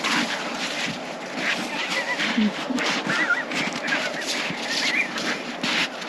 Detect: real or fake real